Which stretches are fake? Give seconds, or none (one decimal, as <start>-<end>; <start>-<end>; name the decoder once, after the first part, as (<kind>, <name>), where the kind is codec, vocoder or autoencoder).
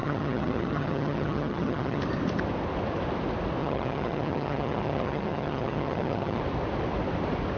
0.0-2.0 (vocoder, HiFi-GAN); 3.6-6.4